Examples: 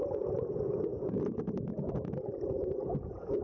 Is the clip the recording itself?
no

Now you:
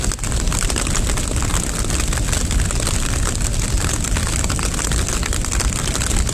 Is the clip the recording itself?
yes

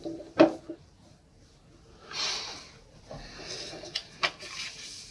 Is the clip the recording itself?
yes